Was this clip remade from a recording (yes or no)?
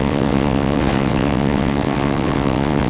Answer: yes